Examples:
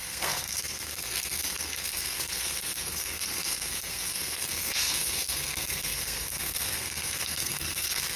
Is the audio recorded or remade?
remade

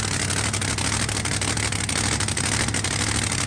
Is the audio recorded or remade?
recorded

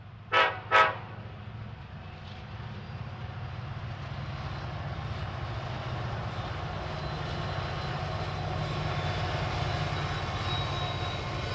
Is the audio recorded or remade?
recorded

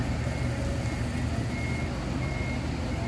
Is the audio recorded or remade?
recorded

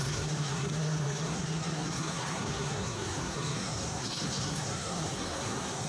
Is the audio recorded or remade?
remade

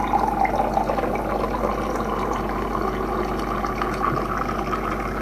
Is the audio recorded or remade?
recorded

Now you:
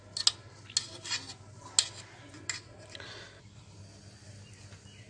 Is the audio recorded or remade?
recorded